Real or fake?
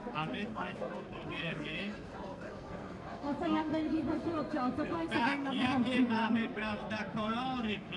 fake